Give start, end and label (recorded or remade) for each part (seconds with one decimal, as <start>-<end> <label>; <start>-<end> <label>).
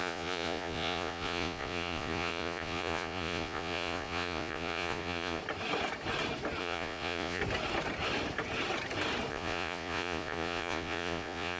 0.0-5.4 remade; 5.4-6.6 recorded; 6.6-7.4 remade; 7.4-9.3 recorded; 9.3-11.6 remade